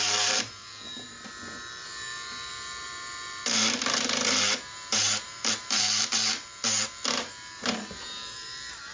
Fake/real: fake